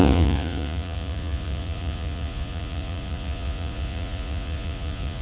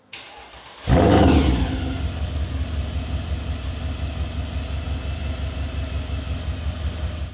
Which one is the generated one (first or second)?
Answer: first